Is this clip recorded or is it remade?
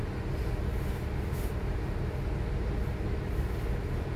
recorded